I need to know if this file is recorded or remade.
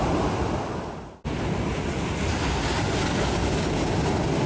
recorded